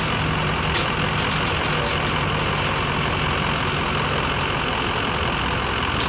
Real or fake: real